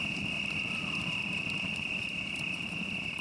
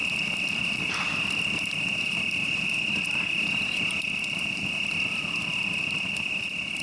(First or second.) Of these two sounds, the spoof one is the first